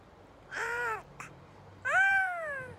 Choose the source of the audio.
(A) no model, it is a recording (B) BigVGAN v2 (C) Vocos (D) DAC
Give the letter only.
B